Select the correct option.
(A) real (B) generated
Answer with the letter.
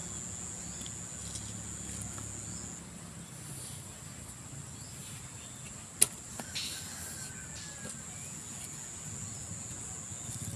A